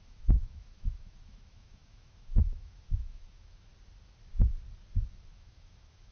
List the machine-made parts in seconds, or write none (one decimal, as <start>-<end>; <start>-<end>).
0.0-3.7; 5.3-6.1